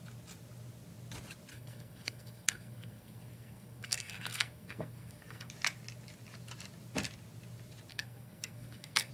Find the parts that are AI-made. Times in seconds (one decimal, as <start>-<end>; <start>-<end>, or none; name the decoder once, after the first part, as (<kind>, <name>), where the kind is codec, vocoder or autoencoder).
1.5-5.5 (codec, SNAC); 7.9-9.1